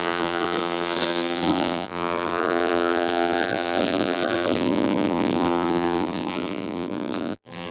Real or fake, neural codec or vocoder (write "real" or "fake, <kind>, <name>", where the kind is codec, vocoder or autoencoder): fake, vocoder, BigVGAN v2